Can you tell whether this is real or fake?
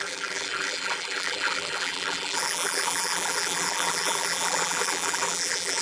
fake